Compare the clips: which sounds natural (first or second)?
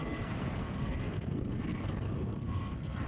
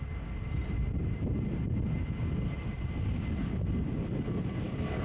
second